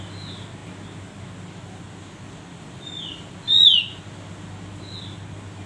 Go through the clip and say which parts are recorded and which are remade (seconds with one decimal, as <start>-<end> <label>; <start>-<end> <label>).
0.0-5.7 recorded